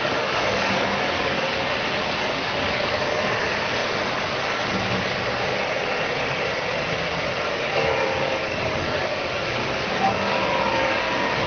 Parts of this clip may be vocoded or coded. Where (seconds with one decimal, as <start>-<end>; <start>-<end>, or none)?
0.0-5.3; 7.5-9.6; 10.1-11.5